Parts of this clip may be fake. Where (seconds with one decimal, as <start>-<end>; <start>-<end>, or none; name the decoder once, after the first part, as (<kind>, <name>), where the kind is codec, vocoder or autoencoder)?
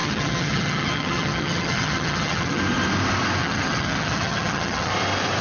0.0-2.6 (vocoder, HiFi-GAN); 3.4-4.9